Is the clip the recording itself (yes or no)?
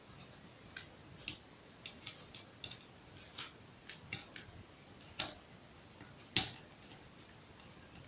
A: yes